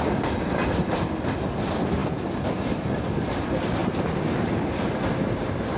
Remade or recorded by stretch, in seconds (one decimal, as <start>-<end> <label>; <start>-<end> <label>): 0.0-5.8 recorded